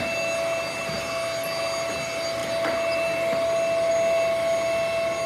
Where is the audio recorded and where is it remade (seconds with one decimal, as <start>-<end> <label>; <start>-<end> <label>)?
0.0-5.3 recorded